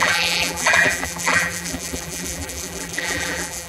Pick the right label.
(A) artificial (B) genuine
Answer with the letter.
A